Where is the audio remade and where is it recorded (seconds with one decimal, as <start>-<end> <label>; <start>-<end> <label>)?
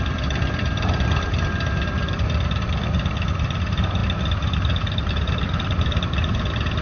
0.0-4.0 remade; 4.0-5.1 recorded; 5.1-6.8 remade